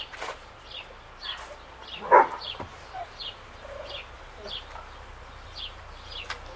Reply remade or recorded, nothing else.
recorded